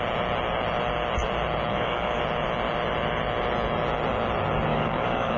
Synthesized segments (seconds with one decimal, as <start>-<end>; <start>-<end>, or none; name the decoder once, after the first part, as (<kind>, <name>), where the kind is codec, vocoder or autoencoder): 1.7-2.2 (codec, DAC); 4.7-5.4